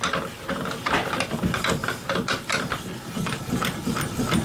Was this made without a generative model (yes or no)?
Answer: yes